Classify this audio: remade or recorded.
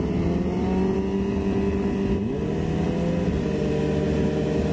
recorded